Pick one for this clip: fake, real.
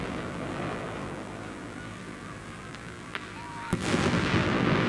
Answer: fake